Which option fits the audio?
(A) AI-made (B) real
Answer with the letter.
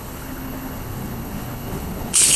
A